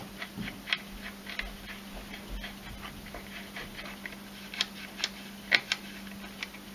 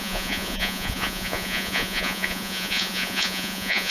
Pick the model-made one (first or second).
second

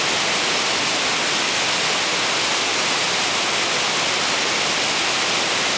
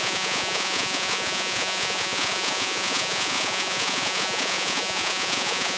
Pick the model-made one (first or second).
second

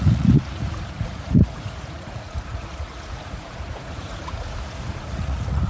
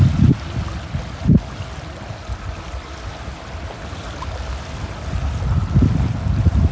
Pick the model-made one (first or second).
first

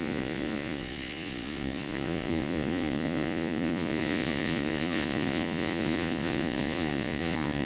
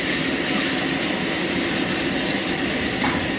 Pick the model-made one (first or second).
first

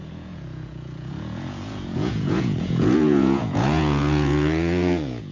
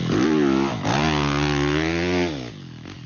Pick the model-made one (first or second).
first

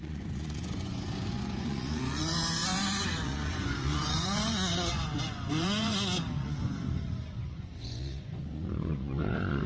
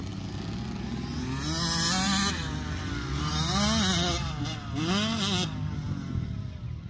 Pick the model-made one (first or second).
first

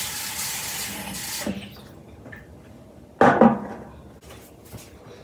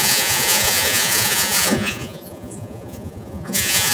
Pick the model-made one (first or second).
second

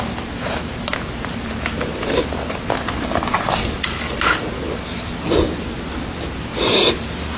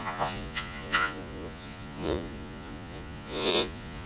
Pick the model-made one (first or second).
second